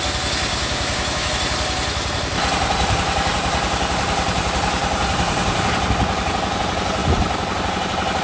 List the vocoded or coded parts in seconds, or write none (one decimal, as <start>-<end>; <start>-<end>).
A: 0.5-1.3